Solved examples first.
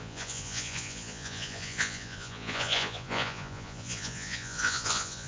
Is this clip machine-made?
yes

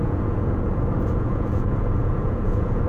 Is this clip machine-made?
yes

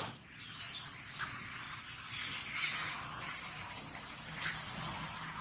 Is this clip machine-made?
no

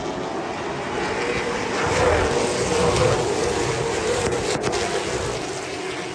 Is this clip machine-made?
no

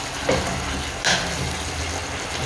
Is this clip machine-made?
no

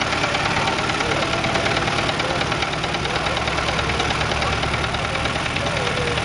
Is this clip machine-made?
no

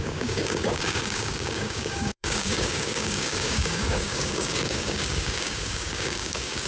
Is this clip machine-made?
yes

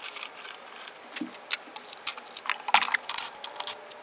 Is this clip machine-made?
no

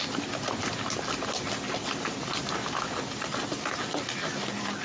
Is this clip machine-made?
no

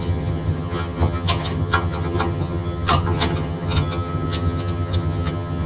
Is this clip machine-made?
yes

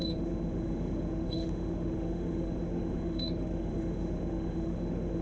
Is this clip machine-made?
yes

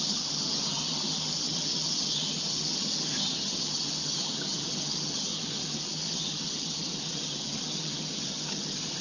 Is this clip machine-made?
yes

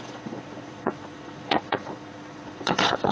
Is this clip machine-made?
yes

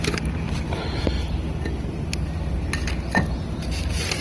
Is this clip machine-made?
no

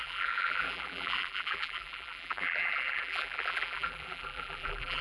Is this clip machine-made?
yes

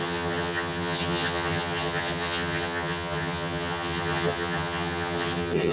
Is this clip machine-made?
yes